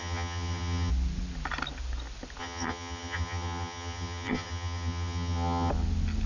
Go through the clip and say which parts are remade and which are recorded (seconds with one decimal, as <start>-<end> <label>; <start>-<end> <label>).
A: 0.0-0.9 remade; 0.9-2.4 recorded; 2.4-5.7 remade; 5.7-6.3 recorded